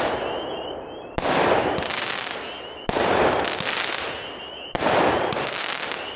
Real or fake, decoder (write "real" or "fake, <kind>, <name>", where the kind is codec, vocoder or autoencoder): fake, vocoder, BigVGAN v2